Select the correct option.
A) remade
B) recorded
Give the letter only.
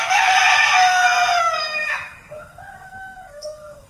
A